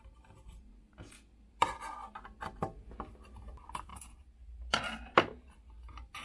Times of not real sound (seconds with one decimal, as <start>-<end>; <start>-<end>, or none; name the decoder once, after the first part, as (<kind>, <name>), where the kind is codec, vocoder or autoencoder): none